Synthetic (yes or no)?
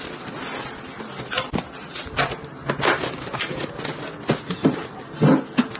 no